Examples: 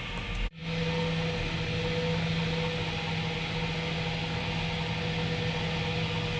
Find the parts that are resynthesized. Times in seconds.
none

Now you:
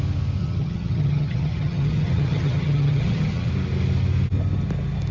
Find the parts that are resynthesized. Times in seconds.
0.4-3.5 (vocoder, HiFi-GAN)

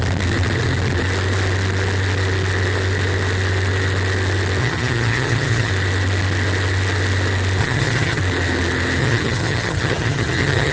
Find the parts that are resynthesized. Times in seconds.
4.6-5.7 (vocoder, HiFi-GAN); 7.6-8.2; 9.0-10.7

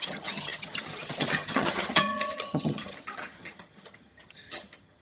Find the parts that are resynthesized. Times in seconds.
0.0-5.0 (vocoder, HiFi-GAN)

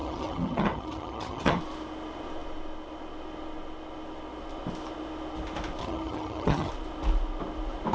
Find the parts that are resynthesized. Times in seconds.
0.0-1.6 (vocoder, HiFi-GAN); 5.8-6.7

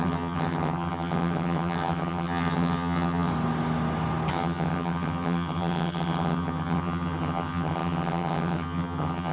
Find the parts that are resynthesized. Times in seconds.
0.0-3.3 (vocoder, HiFi-GAN); 4.3-9.3

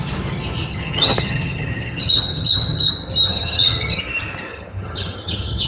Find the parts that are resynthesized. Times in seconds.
0.7-2.9 (vocoder, HiFi-GAN); 3.3-4.0; 4.5-5.7

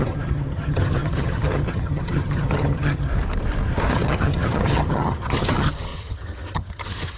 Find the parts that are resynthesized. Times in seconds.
0.0-3.1 (vocoder, HiFi-GAN); 3.9-7.2